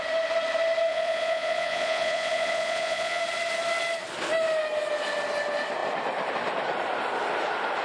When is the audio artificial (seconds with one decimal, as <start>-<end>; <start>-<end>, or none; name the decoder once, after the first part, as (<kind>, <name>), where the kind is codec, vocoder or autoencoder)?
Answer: 0.9-3.2 (vocoder, Vocos)